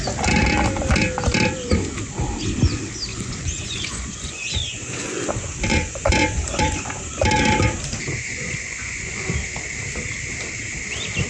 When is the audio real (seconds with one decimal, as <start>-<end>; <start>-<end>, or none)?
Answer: 0.0-3.1; 5.3-5.7; 7.2-8.1; 9.2-11.3